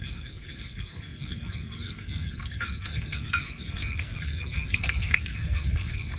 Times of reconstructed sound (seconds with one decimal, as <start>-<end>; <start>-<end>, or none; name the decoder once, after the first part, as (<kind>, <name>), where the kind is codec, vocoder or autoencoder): 0.0-6.2 (codec, SNAC)